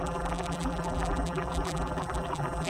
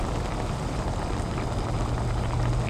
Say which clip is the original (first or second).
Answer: second